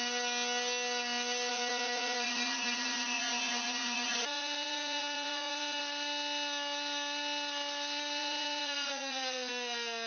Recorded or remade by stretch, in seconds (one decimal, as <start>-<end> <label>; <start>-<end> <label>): 0.0-1.5 recorded; 1.5-5.8 remade; 5.8-8.2 recorded; 8.2-9.5 remade; 9.5-10.1 recorded